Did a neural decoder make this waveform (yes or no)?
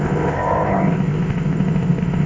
yes